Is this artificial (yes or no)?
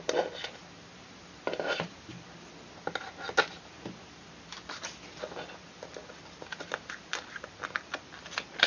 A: no